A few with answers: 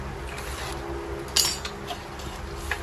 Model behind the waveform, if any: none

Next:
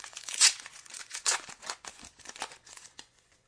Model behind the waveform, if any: vocoder, Vocos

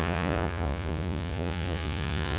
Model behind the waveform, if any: vocoder, Vocos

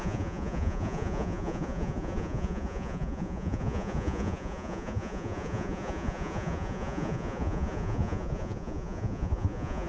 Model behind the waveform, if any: vocoder, Vocos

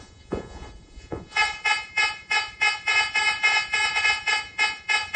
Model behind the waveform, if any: vocoder, Vocos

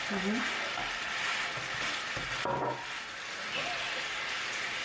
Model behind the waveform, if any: none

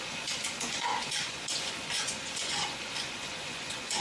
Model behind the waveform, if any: vocoder, Vocos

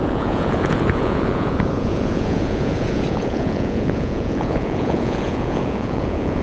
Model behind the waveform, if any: vocoder, Vocos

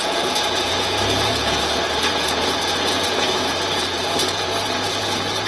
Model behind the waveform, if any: vocoder, Vocos